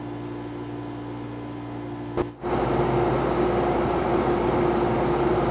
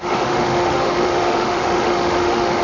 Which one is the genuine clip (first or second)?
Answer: first